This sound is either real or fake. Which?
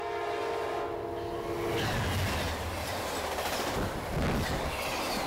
real